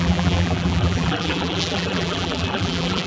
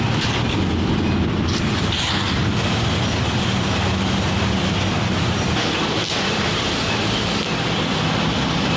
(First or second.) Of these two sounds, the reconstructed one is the first